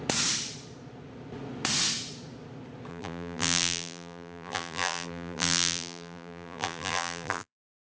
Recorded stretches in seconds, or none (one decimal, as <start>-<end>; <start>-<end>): 0.0-2.9